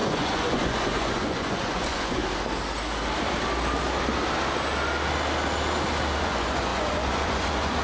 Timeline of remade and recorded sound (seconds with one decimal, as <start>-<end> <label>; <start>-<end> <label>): 0.0-2.2 remade; 2.2-6.2 recorded; 6.2-7.8 remade